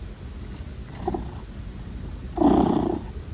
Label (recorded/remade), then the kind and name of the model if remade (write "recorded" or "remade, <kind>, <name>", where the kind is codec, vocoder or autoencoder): recorded